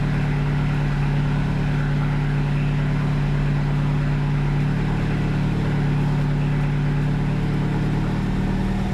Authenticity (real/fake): real